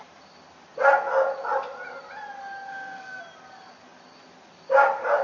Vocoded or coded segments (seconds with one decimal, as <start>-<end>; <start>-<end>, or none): 2.7-3.2